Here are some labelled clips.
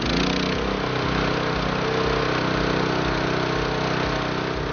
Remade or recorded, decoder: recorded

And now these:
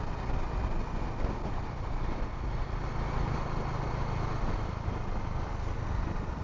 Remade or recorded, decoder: recorded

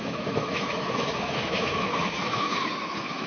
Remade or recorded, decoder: remade, autoencoder, DAC-VAE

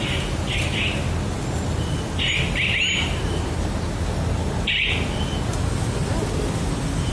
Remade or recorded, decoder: recorded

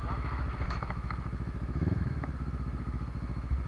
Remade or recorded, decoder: remade, autoencoder, DAC-VAE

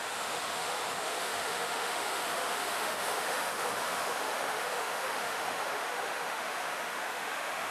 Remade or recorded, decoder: remade, autoencoder, DAC-VAE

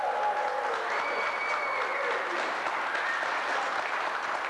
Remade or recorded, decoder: recorded